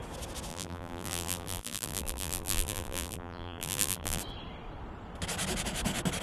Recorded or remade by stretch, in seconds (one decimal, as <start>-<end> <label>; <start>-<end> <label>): 0.0-0.5 recorded; 0.5-4.2 remade; 4.2-6.2 recorded